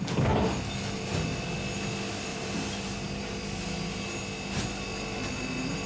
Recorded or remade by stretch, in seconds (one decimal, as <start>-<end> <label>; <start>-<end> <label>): 0.0-2.3 recorded; 2.3-3.2 remade; 3.2-5.9 recorded